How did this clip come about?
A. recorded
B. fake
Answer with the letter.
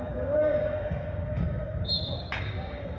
B